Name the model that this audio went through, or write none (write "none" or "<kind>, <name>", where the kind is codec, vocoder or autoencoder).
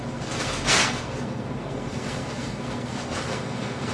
codec, SNAC